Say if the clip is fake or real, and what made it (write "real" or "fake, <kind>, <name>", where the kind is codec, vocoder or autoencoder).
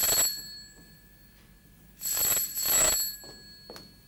real